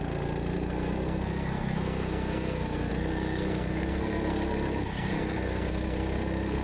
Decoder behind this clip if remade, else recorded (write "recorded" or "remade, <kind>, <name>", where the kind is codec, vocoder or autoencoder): remade, codec, SNAC